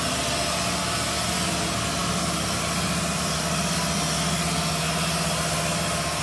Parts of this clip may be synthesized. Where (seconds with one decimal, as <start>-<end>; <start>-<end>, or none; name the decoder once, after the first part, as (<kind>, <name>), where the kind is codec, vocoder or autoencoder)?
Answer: none